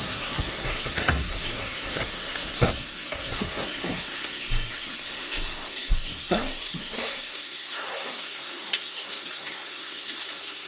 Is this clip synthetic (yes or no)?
yes